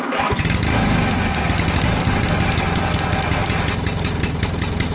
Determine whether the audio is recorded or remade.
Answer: recorded